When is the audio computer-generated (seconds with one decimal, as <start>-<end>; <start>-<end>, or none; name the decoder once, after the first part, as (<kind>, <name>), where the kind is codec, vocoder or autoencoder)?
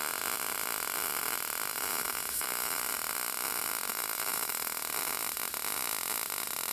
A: 1.7-2.8 (autoencoder, DAC-VAE); 3.9-4.8